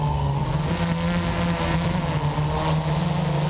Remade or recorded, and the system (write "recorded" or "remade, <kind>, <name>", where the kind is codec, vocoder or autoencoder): recorded